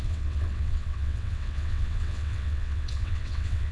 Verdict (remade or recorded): remade